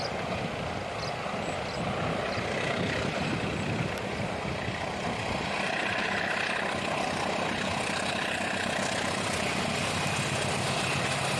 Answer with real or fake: real